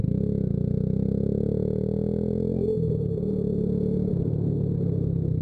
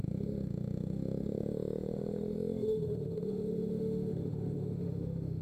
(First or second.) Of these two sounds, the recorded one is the first